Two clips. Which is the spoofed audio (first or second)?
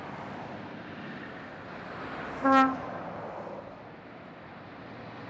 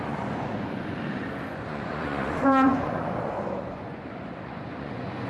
second